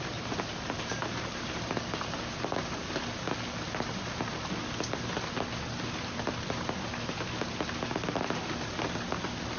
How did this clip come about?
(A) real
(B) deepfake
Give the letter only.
A